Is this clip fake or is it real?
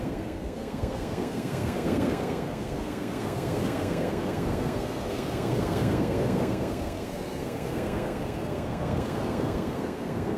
fake